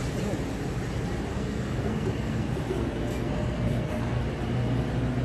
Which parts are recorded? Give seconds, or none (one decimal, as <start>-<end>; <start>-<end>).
0.0-1.3; 4.2-5.2